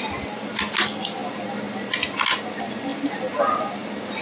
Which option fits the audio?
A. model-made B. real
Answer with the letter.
B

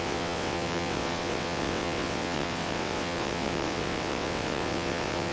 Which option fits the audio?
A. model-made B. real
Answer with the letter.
A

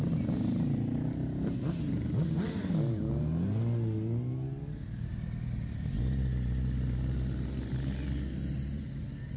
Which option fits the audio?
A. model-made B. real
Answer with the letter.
B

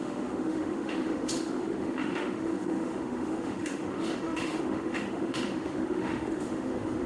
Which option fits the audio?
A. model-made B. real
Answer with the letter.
A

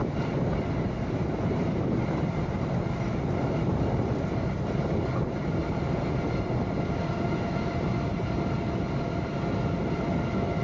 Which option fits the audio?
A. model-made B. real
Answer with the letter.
B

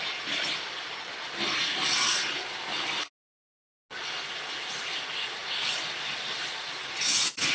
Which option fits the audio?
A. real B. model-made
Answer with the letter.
A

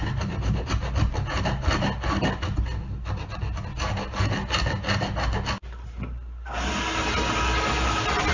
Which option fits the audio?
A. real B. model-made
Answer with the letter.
A